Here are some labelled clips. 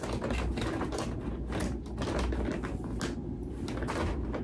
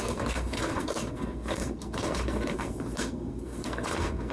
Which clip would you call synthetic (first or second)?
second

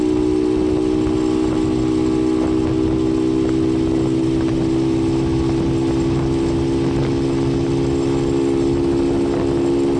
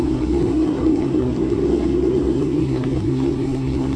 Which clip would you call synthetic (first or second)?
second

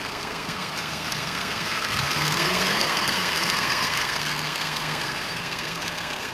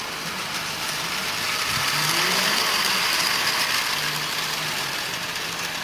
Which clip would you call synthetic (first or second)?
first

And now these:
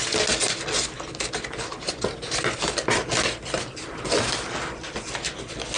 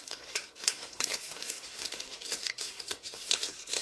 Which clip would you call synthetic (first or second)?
second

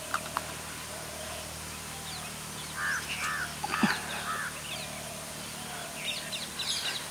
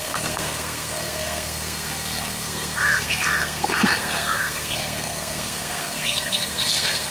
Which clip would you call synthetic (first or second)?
second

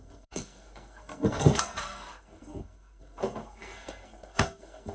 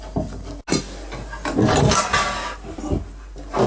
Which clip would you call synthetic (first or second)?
first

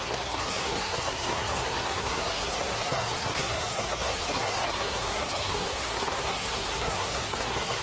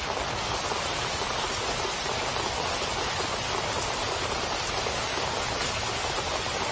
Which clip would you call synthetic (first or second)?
first